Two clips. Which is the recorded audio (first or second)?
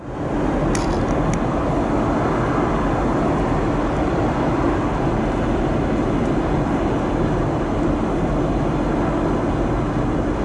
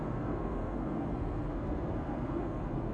first